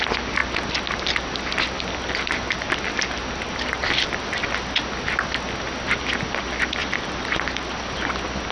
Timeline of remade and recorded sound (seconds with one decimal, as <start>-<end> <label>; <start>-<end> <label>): 0.0-3.8 recorded; 3.8-4.8 remade; 4.8-6.8 recorded; 6.8-7.9 remade; 7.9-8.5 recorded